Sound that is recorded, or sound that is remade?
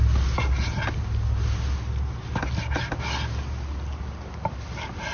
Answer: recorded